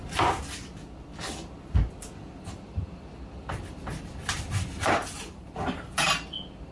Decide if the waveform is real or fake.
real